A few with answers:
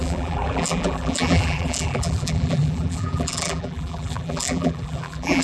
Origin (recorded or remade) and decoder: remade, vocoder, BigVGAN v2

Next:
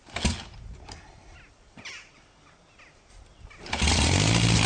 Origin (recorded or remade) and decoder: recorded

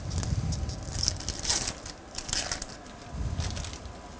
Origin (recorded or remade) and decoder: recorded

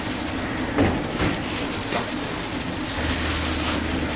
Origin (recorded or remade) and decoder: recorded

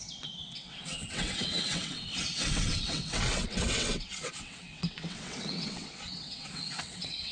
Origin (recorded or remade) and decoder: remade, vocoder, WaveNeXt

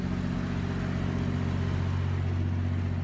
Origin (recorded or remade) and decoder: recorded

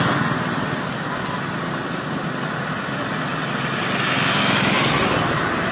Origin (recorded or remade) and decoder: recorded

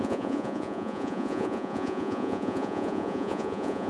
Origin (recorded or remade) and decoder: remade, vocoder, Vocos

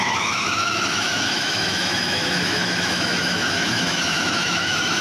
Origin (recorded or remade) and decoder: remade, autoencoder, DAC-VAE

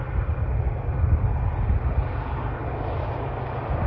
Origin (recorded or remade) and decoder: recorded